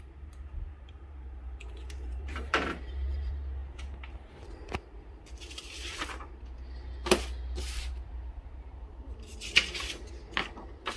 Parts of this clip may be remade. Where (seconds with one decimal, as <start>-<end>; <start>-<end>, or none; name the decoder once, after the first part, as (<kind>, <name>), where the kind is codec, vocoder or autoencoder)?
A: 0.0-7.0 (vocoder, BigVGAN v2); 7.6-9.3